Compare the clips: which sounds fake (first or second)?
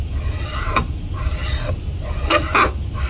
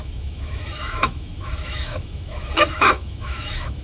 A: second